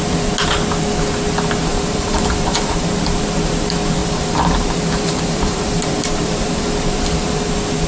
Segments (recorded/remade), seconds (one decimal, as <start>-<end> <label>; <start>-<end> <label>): 0.0-1.7 recorded; 1.7-3.0 remade; 3.0-4.0 recorded; 4.0-7.5 remade; 7.5-7.9 recorded